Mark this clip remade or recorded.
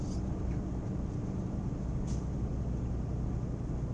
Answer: recorded